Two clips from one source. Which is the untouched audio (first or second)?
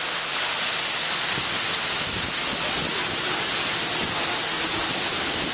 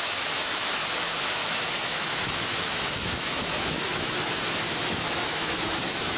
first